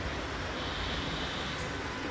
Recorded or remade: recorded